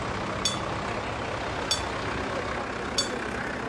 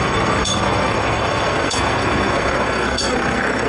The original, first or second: first